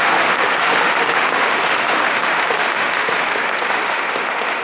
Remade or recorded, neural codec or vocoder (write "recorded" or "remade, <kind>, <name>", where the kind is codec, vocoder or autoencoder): remade, autoencoder, DAC-VAE